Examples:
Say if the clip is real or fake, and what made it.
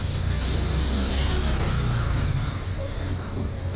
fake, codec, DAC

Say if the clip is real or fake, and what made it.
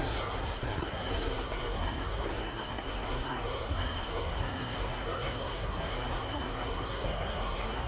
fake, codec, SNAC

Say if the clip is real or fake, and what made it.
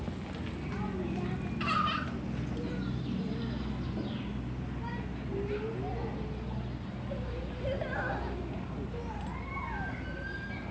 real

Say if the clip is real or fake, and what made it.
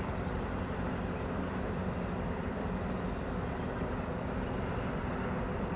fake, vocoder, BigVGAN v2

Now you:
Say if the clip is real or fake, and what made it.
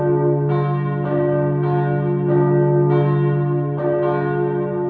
real